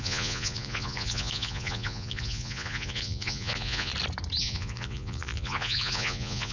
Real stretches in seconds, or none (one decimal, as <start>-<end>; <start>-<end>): 3.9-4.4